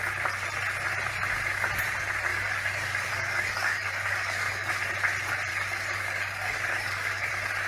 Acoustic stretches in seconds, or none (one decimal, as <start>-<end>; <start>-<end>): 0.0-2.3; 4.7-5.5; 7.3-7.7